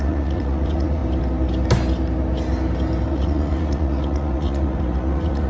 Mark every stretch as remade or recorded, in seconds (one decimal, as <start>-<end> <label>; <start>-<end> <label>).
0.0-1.0 remade; 1.0-3.1 recorded; 3.1-5.5 remade